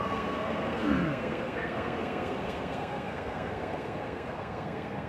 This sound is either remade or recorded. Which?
remade